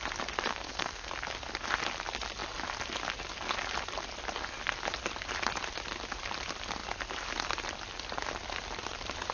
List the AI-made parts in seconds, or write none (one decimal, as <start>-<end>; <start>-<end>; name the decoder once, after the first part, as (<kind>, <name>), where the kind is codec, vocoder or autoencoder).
0.5-1.1 (codec, SNAC)